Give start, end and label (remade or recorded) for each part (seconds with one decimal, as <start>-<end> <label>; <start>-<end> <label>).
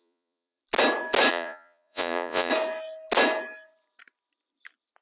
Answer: 0.0-0.6 remade; 0.6-1.3 recorded; 1.3-2.5 remade; 2.5-5.0 recorded